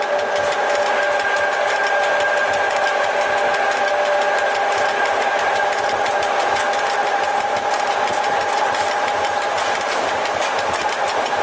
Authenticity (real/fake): real